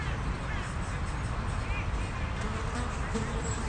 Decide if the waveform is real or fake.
real